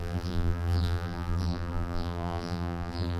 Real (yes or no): no